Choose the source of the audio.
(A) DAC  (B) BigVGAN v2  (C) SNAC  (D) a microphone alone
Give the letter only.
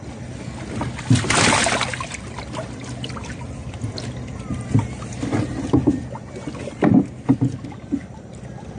D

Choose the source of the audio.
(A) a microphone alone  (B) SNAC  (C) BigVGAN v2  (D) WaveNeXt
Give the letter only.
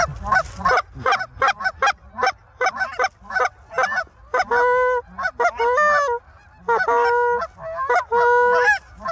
A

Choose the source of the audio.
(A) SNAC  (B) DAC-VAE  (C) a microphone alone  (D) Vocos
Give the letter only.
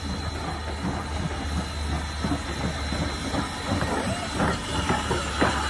C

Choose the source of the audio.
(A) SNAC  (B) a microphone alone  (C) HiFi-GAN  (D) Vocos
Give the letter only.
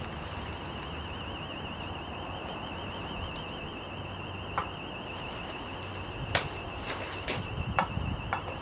B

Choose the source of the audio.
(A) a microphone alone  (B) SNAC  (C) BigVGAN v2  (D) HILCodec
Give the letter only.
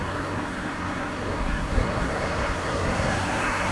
B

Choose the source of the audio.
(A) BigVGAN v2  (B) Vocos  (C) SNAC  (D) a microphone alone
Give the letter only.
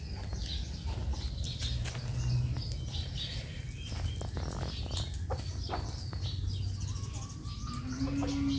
D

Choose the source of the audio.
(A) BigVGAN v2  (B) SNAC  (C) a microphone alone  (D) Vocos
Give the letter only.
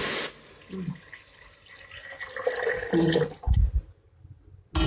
C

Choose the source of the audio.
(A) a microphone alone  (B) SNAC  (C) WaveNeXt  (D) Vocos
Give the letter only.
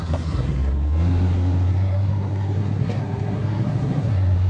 B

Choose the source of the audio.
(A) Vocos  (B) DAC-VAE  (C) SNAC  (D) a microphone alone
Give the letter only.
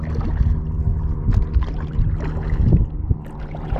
D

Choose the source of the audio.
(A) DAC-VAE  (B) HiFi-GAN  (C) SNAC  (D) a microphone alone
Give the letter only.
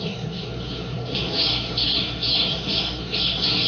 C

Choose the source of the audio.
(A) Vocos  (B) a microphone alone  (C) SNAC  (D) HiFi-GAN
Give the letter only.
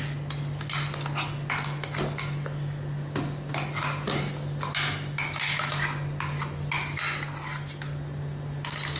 B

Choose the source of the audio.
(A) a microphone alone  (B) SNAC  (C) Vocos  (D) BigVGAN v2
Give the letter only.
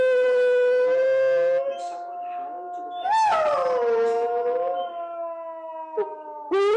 A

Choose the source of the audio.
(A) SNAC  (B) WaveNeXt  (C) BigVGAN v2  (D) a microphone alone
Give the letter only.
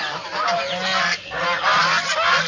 D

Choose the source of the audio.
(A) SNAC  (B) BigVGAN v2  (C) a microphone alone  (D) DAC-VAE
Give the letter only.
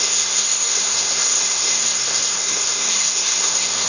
A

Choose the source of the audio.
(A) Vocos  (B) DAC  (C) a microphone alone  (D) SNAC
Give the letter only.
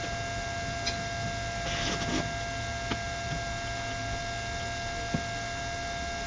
C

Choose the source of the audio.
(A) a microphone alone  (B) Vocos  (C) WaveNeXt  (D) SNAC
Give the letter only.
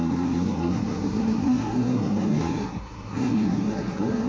D